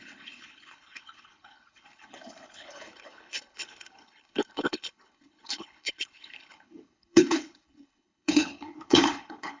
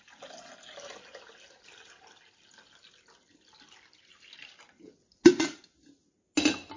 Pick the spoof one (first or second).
first